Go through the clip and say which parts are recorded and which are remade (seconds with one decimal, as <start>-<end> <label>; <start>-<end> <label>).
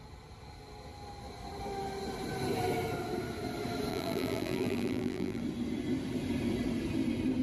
0.0-3.9 recorded; 3.9-5.4 remade; 5.4-7.4 recorded